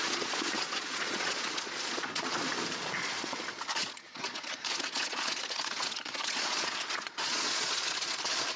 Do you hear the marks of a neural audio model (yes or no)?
yes